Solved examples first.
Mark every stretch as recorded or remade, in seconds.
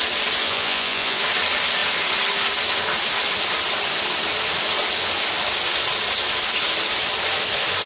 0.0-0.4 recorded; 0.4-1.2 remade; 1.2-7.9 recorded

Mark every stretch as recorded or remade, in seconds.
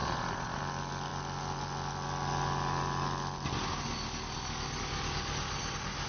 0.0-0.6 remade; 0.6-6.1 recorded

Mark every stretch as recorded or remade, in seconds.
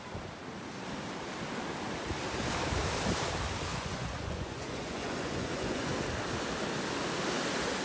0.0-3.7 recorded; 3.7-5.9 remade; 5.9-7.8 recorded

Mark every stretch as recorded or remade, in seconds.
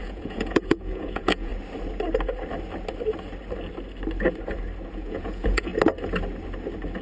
0.0-1.5 remade; 1.5-4.9 recorded; 4.9-5.7 remade; 5.7-7.0 recorded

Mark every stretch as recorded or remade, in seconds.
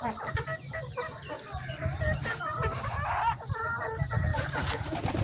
0.0-4.3 recorded; 4.3-5.2 remade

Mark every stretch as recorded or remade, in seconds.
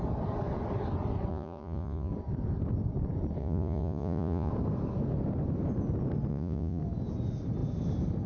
0.0-1.3 recorded; 1.3-2.1 remade; 2.1-3.4 recorded; 3.4-4.5 remade; 4.5-6.3 recorded; 6.3-6.8 remade; 6.8-8.3 recorded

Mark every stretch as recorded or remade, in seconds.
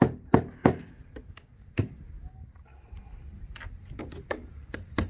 0.0-5.1 recorded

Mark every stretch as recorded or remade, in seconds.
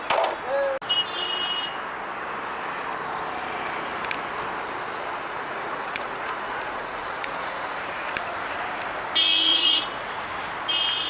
0.0-5.2 recorded; 5.2-8.1 remade; 8.1-9.5 recorded; 9.5-10.3 remade; 10.3-11.1 recorded